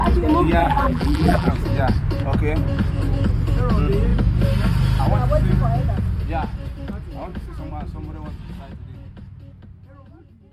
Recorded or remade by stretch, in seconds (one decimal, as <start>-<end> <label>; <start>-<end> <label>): 0.0-0.6 recorded; 0.6-1.5 remade; 1.5-10.5 recorded